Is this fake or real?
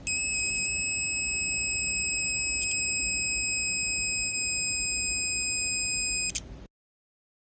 real